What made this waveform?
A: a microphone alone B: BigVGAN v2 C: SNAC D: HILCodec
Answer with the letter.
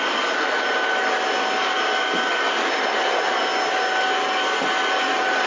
A